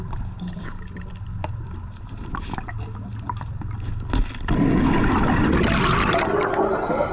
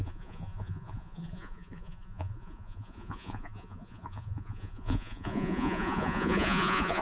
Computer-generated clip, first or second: second